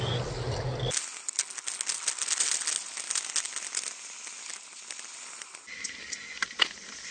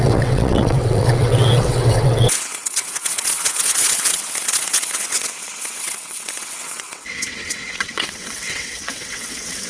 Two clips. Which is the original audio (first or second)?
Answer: first